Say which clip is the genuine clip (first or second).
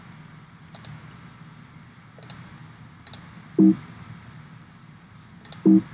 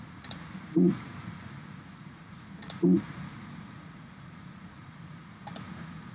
first